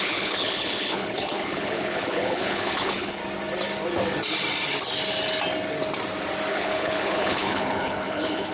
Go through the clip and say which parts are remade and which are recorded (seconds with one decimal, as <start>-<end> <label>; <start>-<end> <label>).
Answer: 0.0-3.2 remade; 3.2-6.5 recorded; 6.5-8.5 remade

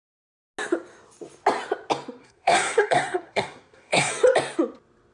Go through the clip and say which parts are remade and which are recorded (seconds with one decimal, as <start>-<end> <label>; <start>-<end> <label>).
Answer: 0.0-2.2 recorded; 2.2-4.1 remade; 4.1-5.1 recorded

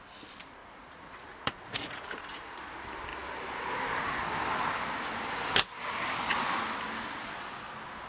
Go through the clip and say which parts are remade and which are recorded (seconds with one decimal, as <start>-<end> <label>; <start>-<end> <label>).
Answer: 0.0-0.6 recorded; 0.6-2.6 remade; 2.6-8.1 recorded

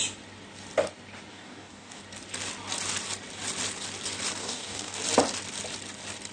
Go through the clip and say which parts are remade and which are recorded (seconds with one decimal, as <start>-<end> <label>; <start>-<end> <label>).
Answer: 0.0-1.3 recorded; 1.3-2.0 remade; 2.0-4.4 recorded; 4.4-5.0 remade; 5.0-6.3 recorded

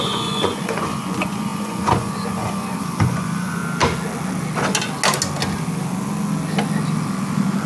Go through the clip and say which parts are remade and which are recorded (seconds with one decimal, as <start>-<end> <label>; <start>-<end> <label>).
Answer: 0.0-3.6 remade; 3.6-7.7 recorded

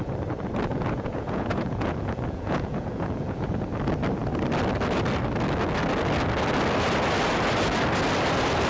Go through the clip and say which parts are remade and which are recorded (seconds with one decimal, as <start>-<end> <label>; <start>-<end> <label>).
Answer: 0.0-0.7 recorded; 0.7-3.5 remade; 3.5-8.7 recorded